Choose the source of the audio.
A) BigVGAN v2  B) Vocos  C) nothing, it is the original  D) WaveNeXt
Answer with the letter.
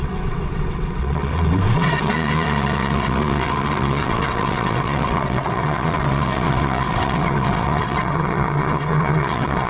D